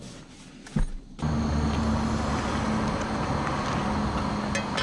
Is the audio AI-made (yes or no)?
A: no